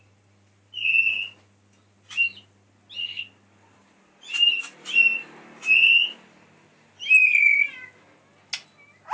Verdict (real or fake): real